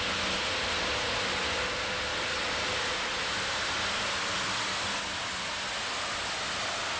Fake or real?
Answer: real